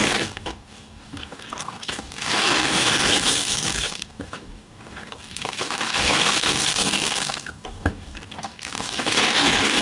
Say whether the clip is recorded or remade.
remade